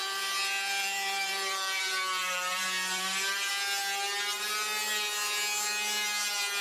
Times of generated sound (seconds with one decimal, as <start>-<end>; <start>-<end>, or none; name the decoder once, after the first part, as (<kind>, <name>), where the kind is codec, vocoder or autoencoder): 0.0-3.5 (vocoder, BigVGAN v2)